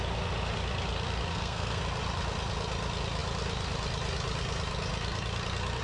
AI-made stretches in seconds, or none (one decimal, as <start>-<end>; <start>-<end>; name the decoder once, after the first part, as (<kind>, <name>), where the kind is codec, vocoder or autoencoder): 1.3-1.8 (codec, SNAC)